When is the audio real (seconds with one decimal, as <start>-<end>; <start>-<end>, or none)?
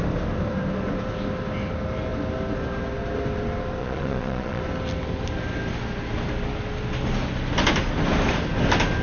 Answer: 0.0-3.8; 4.6-9.0